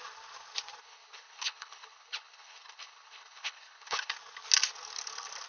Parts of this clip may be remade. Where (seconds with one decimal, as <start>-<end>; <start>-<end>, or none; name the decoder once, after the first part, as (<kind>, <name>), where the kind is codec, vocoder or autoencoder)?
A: 0.8-4.1 (codec, HILCodec)